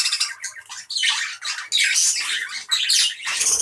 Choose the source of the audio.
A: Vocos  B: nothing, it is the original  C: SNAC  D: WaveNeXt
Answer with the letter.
B